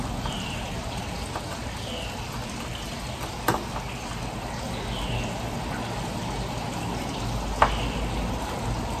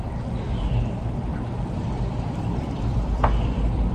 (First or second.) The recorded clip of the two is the first